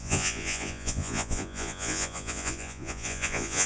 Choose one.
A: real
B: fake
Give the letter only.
B